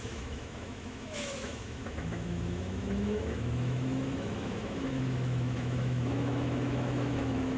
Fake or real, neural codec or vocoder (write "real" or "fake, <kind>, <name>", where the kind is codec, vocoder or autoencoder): fake, autoencoder, DAC-VAE